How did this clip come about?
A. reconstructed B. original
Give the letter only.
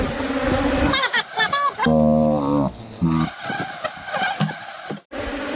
B